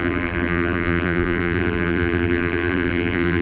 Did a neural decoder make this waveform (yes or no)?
yes